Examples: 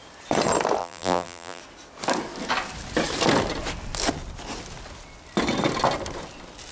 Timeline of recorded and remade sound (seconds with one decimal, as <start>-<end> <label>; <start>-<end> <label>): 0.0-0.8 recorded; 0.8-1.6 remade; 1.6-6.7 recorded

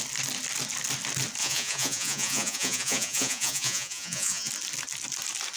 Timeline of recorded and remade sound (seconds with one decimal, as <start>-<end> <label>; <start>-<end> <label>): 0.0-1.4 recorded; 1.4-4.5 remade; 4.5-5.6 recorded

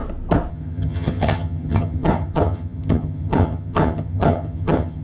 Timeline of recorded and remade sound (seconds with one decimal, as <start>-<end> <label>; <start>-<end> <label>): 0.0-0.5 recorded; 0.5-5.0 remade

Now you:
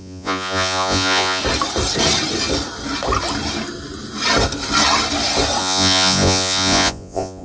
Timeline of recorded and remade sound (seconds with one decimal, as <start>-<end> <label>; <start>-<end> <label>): 0.0-1.4 remade; 1.4-5.6 recorded; 5.6-7.4 remade

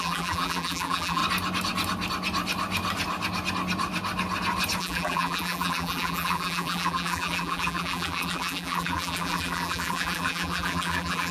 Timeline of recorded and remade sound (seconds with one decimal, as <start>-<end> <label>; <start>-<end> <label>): 0.0-1.2 remade; 1.2-4.8 recorded; 4.8-11.3 remade

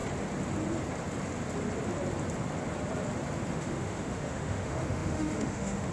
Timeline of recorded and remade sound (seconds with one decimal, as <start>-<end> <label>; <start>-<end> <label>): 0.0-3.5 recorded; 3.5-5.9 remade

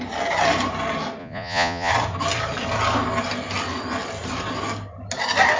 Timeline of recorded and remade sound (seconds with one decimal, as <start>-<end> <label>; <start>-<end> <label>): 0.0-1.2 recorded; 1.2-1.9 remade; 1.9-5.6 recorded

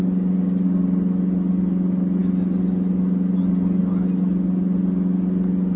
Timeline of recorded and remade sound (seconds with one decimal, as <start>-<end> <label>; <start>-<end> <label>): 0.0-5.8 recorded